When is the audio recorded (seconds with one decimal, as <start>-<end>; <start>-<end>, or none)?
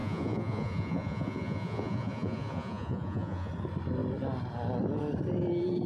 3.5-5.9